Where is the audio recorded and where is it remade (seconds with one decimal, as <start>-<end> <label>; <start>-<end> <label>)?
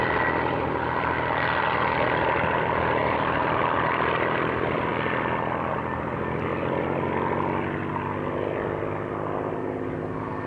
0.0-3.0 recorded; 3.0-4.9 remade; 4.9-6.5 recorded; 6.5-7.1 remade; 7.1-10.5 recorded